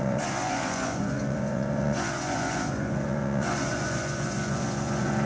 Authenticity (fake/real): fake